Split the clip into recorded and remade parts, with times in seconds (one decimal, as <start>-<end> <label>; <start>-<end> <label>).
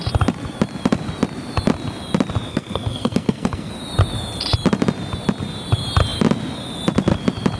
0.0-2.5 recorded; 2.5-3.7 remade; 3.7-7.6 recorded